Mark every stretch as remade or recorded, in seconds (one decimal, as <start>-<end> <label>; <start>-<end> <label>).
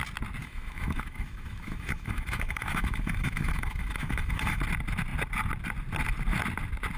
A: 0.0-0.4 recorded; 0.4-4.6 remade; 4.6-7.0 recorded